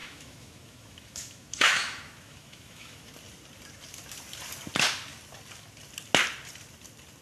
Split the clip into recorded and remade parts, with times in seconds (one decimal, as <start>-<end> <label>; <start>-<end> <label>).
0.0-3.1 remade; 3.1-7.2 recorded